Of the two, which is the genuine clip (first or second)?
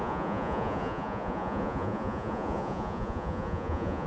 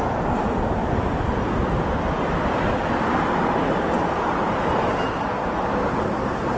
second